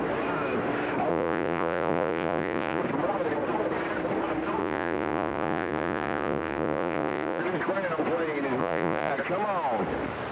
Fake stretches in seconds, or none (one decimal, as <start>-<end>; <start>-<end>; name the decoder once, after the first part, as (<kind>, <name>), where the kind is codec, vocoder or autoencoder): 1.1-2.8 (vocoder, Vocos); 4.6-7.4; 8.6-9.1